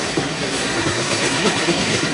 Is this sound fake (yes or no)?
yes